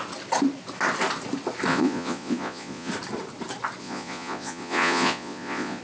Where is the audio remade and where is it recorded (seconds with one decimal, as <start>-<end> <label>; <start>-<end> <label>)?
0.0-1.7 recorded; 1.7-2.9 remade; 2.9-3.8 recorded; 3.8-5.8 remade